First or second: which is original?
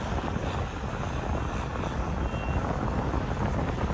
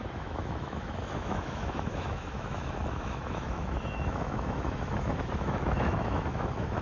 first